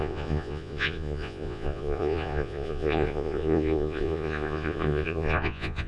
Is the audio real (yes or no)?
no